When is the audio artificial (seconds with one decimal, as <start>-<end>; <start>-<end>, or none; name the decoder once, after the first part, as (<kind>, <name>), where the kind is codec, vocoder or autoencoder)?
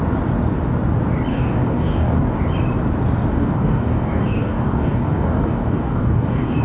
1.3-2.4 (codec, DAC); 3.3-6.6